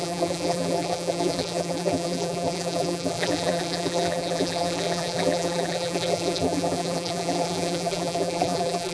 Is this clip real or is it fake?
fake